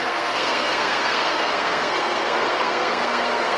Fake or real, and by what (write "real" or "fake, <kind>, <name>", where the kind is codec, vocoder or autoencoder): fake, codec, SNAC